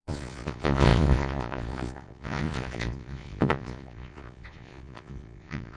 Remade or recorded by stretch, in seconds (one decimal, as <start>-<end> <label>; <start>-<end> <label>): 0.0-5.8 remade